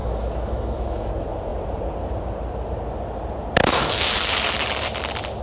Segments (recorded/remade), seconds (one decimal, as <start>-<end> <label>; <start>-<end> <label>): 0.0-1.1 remade; 1.1-3.6 recorded; 3.6-4.4 remade; 4.4-5.4 recorded